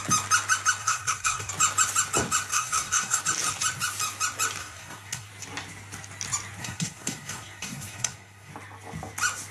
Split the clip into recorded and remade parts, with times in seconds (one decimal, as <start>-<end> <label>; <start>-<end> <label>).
0.0-0.8 recorded; 0.8-1.5 remade; 1.5-2.5 recorded; 2.5-3.2 remade; 3.2-4.6 recorded; 4.6-5.3 remade; 5.3-6.6 recorded; 6.6-8.5 remade; 8.5-9.5 recorded